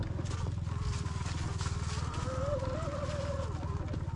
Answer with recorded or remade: recorded